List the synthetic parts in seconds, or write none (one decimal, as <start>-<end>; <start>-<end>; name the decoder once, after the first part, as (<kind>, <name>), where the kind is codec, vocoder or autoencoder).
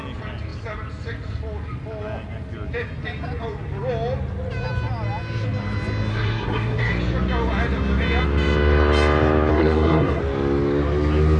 6.1-6.9 (codec, SNAC); 9.5-10.2